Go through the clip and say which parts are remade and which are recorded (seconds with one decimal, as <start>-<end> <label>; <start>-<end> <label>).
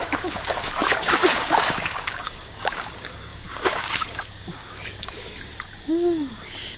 0.0-6.8 remade